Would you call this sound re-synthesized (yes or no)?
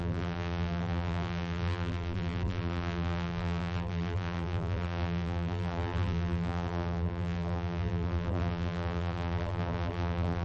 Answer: yes